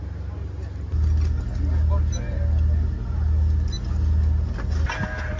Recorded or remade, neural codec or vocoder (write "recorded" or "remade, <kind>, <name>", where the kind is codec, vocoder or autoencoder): recorded